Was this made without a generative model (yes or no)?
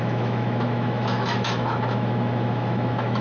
no